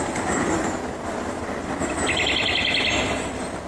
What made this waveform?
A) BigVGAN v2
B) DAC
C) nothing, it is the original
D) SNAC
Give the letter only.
C